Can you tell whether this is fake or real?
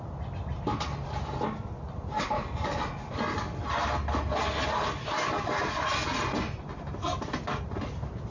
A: real